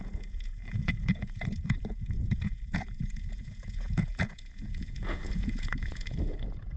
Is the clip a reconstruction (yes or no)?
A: yes